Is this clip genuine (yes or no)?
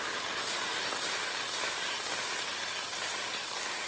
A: yes